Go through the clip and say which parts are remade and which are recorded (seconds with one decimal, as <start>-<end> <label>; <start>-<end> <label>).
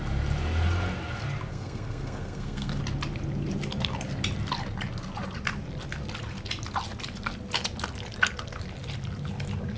0.0-1.5 recorded; 1.5-2.8 remade; 2.8-9.8 recorded